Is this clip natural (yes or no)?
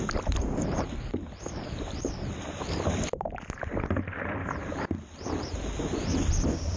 yes